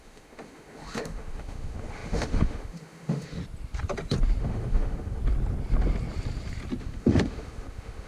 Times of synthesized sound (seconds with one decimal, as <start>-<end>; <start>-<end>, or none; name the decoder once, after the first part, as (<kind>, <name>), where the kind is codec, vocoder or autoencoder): 0.0-3.4 (autoencoder, DAC-VAE); 4.4-5.2; 6.8-8.1